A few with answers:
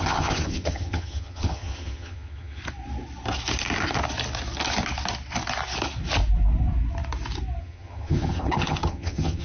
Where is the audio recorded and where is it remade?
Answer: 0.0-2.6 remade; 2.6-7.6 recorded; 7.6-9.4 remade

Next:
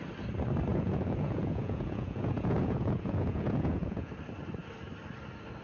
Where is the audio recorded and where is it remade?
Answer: 0.0-0.7 recorded; 0.7-4.1 remade; 4.1-5.6 recorded

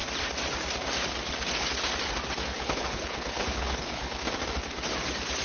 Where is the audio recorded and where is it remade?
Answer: 0.0-2.5 recorded; 2.5-4.2 remade; 4.2-5.4 recorded